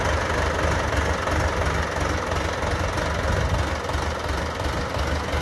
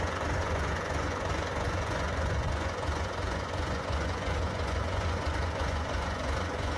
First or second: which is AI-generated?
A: second